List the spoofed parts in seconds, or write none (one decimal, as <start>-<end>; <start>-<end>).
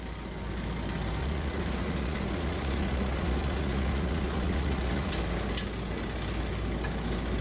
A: 1.2-5.1